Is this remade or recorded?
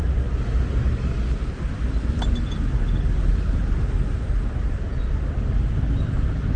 recorded